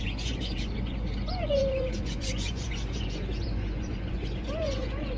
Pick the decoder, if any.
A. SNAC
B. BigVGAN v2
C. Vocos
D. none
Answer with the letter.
C